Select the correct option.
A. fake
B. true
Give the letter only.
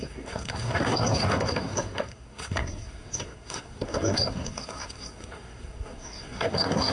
A